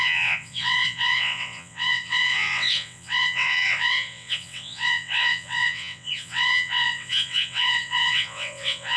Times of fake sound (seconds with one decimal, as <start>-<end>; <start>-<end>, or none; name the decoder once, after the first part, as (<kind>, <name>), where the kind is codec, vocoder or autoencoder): 0.0-9.0 (vocoder, WaveNeXt)